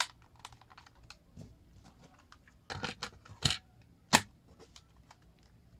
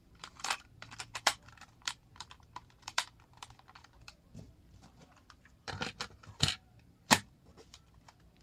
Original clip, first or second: first